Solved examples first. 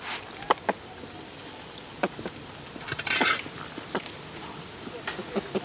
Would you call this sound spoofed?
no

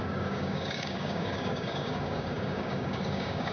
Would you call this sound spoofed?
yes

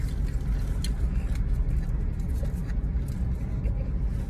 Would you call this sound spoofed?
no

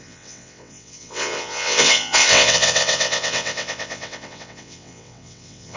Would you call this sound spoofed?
yes